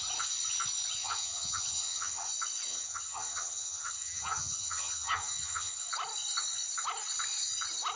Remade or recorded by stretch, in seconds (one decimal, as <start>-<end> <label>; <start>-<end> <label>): 0.0-1.0 recorded; 1.0-2.3 remade; 2.3-2.7 recorded; 2.7-5.9 remade; 5.9-8.0 recorded